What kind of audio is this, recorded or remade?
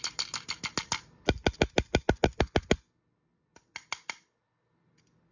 recorded